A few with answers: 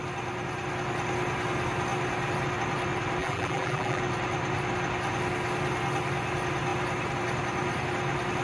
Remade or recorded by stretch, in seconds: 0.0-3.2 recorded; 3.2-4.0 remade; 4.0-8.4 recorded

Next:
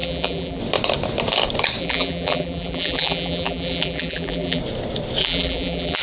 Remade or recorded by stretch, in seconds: 0.0-0.6 remade; 0.6-1.8 recorded; 1.8-4.6 remade; 4.6-5.2 recorded; 5.2-6.0 remade

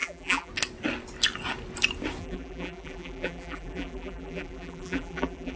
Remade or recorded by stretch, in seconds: 0.0-0.5 remade; 0.5-2.2 recorded; 2.2-5.6 remade